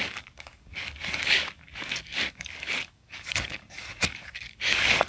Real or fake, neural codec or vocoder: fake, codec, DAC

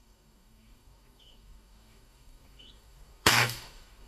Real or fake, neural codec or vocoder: fake, codec, DAC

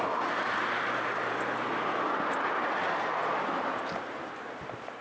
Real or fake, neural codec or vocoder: real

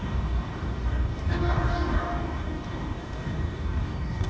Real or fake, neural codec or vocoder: fake, codec, DAC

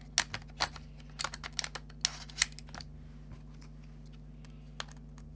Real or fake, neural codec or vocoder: real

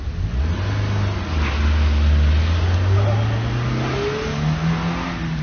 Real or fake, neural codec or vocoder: real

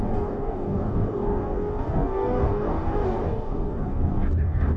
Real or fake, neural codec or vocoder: fake, codec, DAC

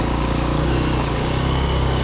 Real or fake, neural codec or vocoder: fake, codec, DAC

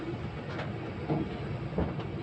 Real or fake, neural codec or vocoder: real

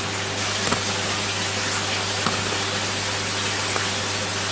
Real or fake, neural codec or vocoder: real